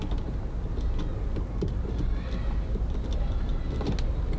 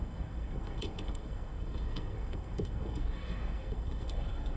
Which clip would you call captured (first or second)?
first